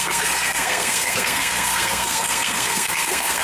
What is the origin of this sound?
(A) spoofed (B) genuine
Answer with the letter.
A